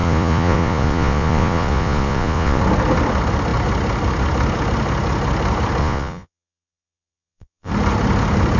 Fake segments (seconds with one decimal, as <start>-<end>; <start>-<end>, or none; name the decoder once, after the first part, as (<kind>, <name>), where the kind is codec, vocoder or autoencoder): 0.0-2.6 (vocoder, Vocos); 5.8-7.7